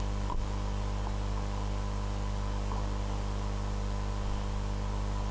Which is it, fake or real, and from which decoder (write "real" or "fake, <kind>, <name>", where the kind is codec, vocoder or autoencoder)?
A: real